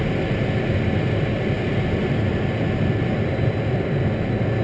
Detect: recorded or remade recorded